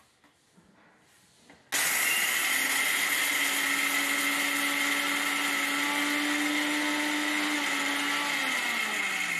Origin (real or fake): real